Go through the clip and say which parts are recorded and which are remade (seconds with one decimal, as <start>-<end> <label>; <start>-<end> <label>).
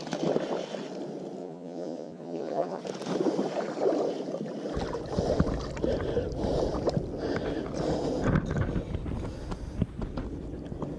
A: 0.0-1.4 recorded; 1.4-2.8 remade; 2.8-11.0 recorded